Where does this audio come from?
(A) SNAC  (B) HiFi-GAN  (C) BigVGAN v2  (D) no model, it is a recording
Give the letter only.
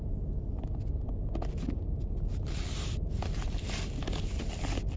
D